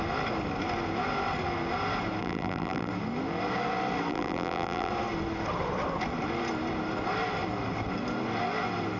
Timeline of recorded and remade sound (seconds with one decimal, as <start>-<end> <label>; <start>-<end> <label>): 0.0-2.2 recorded; 2.2-2.9 remade; 2.9-4.1 recorded; 4.1-4.9 remade; 4.9-9.0 recorded